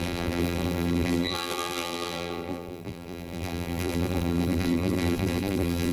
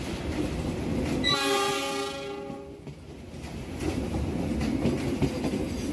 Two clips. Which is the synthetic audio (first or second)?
first